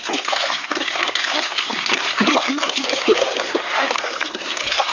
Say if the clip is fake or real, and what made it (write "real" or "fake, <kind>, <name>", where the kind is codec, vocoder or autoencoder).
fake, codec, SNAC